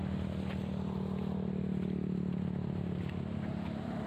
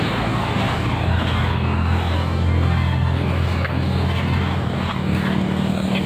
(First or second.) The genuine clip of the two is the first